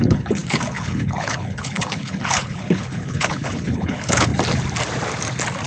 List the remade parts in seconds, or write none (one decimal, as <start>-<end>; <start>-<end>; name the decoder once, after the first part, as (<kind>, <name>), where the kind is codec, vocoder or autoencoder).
0.0-4.3 (codec, HILCodec)